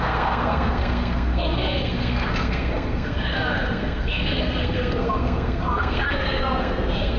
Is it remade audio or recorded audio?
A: remade